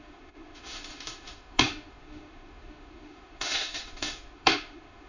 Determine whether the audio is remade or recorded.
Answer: remade